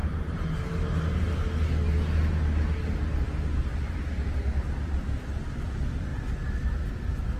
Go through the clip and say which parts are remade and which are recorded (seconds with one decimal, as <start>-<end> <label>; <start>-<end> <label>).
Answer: 0.0-3.9 recorded; 3.9-6.1 remade; 6.1-6.9 recorded; 6.9-7.4 remade